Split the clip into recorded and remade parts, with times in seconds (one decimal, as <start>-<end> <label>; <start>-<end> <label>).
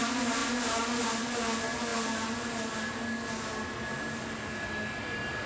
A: 0.0-5.5 recorded